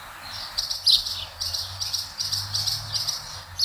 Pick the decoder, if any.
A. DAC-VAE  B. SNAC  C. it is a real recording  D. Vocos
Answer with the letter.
C